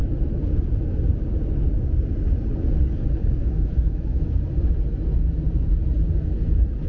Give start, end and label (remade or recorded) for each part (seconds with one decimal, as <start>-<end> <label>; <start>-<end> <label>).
0.0-3.4 recorded; 3.4-4.3 remade; 4.3-6.9 recorded